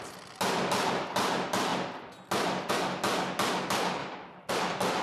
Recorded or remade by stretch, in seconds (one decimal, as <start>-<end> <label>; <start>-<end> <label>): 0.0-5.0 recorded